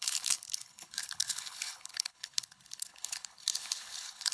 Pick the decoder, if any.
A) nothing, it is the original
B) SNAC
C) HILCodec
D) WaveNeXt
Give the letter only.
C